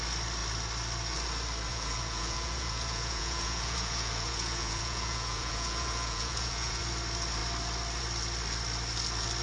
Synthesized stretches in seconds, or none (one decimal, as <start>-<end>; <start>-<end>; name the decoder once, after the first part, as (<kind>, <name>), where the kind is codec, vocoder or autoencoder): 1.7-6.8 (vocoder, Vocos)